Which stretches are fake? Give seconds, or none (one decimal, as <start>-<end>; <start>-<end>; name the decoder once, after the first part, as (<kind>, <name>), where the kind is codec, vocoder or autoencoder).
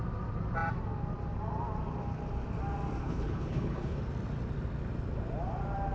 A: 3.0-4.0 (codec, HILCodec)